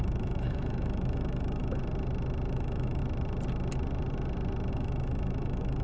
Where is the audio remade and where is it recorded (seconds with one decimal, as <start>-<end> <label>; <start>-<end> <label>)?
0.0-1.8 remade; 1.8-2.5 recorded; 2.5-3.0 remade; 3.0-4.7 recorded; 4.7-5.8 remade